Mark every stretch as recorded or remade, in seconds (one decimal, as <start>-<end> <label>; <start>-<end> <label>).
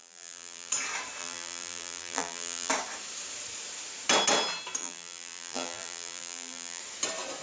0.0-0.7 remade; 0.7-1.2 recorded; 1.2-2.7 remade; 2.7-4.8 recorded; 4.8-6.8 remade; 6.8-7.4 recorded